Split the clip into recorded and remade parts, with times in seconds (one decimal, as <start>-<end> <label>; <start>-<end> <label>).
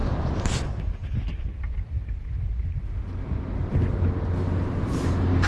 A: 0.0-5.5 recorded